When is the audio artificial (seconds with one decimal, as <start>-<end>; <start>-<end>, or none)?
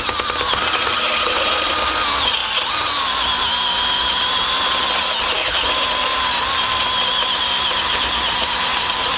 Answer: none